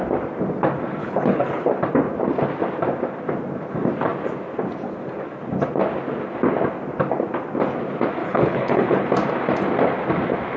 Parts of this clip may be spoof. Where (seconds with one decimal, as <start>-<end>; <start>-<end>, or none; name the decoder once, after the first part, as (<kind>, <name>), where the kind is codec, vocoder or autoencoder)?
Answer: 1.0-1.7 (codec, HILCodec); 8.2-9.1